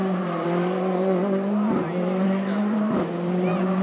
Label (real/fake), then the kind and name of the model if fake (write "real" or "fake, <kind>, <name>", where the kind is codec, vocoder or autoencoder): fake, vocoder, BigVGAN v2